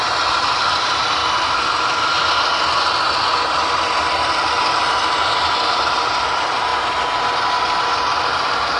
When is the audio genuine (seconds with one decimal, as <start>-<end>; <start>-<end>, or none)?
1.2-4.8; 6.7-8.8